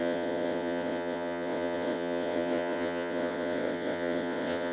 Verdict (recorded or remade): remade